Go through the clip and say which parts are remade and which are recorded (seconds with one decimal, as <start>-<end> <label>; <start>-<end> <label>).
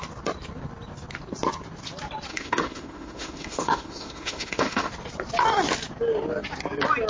0.0-2.3 recorded; 2.3-4.9 remade; 4.9-7.1 recorded